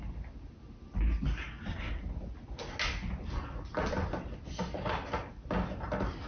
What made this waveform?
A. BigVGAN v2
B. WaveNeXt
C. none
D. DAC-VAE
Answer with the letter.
C